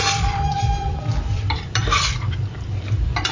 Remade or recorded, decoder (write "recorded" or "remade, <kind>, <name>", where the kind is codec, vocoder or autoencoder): remade, vocoder, BigVGAN v2